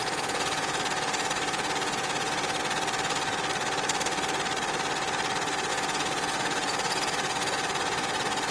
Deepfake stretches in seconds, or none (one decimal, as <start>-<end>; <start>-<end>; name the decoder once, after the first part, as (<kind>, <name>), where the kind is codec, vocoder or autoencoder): 0.0-2.6 (vocoder, Vocos); 5.7-8.5